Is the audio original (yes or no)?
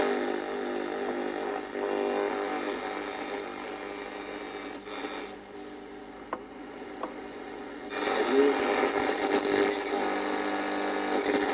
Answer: yes